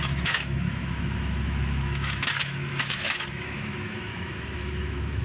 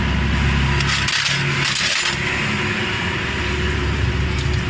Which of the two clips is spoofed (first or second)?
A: first